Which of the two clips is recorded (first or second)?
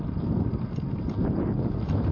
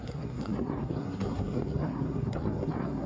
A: first